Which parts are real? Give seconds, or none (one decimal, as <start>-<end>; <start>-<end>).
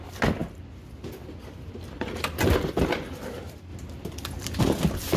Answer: 0.0-5.2